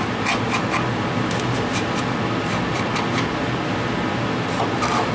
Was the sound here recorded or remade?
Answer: recorded